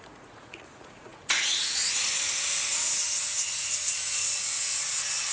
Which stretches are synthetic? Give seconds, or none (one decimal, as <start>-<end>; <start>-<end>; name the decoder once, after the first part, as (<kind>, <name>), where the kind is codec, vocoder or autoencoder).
0.0-5.3 (vocoder, Vocos)